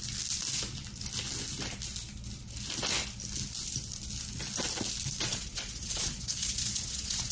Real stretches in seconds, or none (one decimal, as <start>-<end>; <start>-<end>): 0.0-5.3